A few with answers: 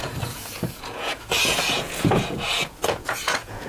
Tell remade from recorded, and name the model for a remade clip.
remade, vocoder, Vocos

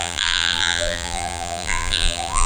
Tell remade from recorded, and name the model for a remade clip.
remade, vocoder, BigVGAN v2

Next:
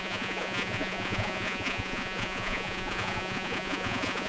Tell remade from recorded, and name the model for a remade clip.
remade, vocoder, Vocos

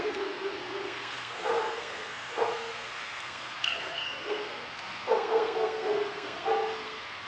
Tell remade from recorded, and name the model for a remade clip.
remade, codec, SNAC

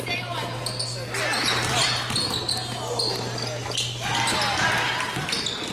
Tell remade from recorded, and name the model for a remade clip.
recorded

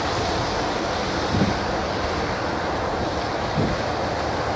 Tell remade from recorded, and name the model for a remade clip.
recorded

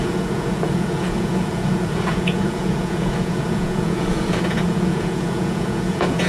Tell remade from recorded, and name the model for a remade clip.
remade, vocoder, Vocos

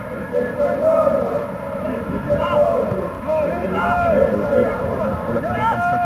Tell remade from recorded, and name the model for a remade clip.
recorded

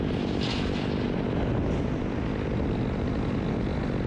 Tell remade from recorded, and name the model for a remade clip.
recorded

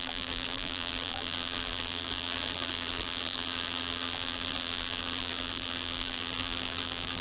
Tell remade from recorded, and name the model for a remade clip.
remade, vocoder, BigVGAN v2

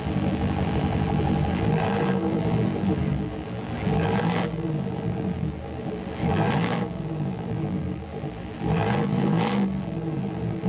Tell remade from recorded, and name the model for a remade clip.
remade, vocoder, BigVGAN v2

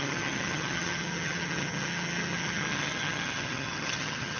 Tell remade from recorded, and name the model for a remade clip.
remade, vocoder, HiFi-GAN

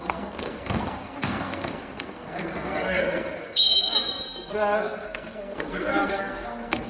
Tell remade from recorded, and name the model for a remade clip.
remade, codec, SNAC